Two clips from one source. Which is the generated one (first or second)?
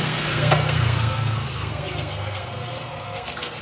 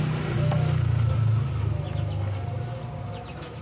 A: first